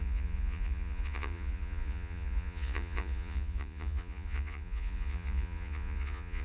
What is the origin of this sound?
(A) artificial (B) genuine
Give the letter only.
A